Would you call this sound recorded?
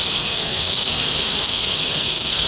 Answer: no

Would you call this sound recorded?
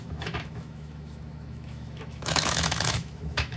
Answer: no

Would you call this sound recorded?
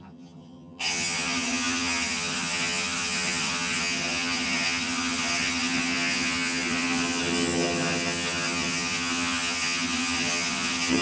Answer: no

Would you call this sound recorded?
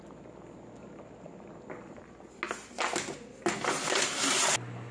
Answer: yes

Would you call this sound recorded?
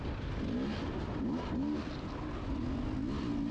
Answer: yes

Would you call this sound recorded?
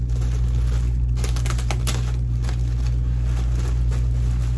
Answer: yes